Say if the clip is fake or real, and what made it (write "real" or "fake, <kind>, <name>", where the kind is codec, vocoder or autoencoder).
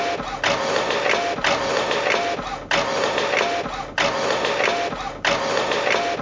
real